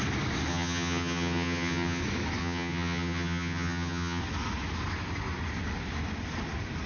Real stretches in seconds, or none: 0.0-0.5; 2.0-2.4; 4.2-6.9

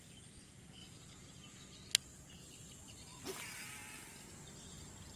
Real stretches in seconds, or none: 0.0-5.2